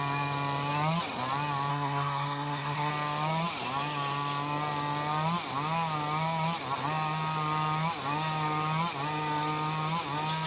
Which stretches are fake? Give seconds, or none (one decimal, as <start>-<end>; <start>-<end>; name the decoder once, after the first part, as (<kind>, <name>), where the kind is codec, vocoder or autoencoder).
1.7-2.9 (codec, SNAC)